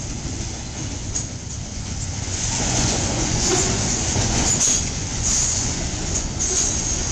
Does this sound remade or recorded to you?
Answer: remade